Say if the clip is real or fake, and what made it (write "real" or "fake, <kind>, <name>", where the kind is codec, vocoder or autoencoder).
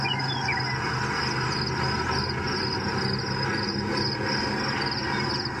real